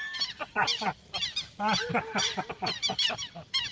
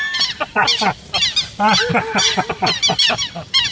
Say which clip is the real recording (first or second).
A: second